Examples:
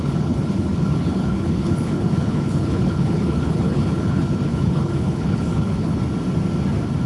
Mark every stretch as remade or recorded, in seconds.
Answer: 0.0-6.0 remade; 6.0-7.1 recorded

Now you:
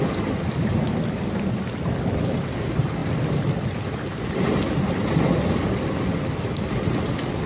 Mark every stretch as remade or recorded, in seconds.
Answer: 0.0-7.5 recorded

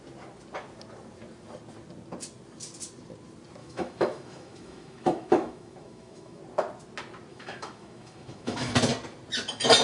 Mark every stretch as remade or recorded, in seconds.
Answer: 0.0-3.6 recorded; 3.6-6.4 remade; 6.4-7.3 recorded; 7.3-8.7 remade; 8.7-9.8 recorded